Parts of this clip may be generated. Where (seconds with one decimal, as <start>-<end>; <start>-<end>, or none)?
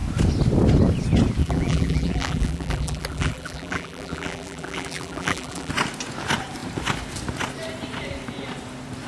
1.4-5.7